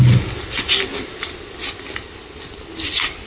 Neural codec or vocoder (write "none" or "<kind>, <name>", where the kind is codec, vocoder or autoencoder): none